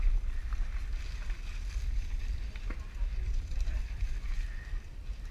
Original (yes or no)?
yes